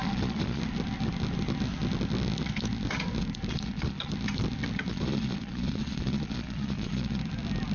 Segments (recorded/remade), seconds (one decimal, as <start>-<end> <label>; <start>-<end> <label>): 0.0-0.6 remade; 0.6-3.5 recorded; 3.5-4.1 remade; 4.1-4.9 recorded; 4.9-7.2 remade; 7.2-7.7 recorded